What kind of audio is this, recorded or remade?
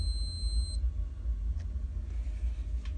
recorded